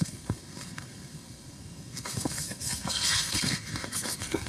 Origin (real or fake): fake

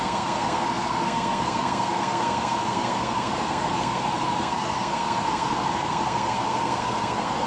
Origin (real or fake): fake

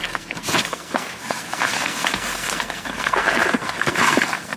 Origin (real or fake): fake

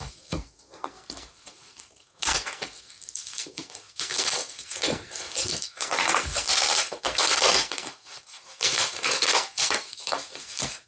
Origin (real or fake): fake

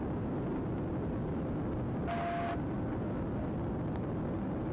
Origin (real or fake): real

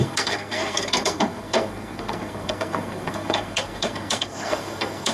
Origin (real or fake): fake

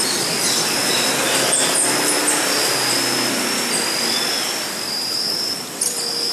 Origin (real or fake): real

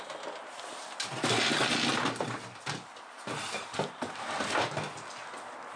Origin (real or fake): real